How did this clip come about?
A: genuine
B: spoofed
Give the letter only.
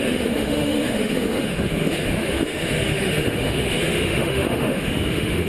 B